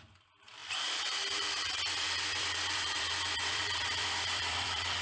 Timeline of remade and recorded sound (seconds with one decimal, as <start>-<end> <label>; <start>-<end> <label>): 0.0-5.0 remade